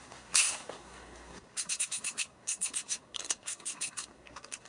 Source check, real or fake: fake